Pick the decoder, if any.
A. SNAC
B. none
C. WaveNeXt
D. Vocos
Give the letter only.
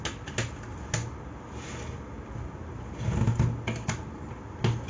B